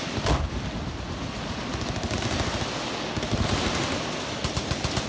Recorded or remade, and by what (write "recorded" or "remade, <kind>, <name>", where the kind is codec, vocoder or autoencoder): recorded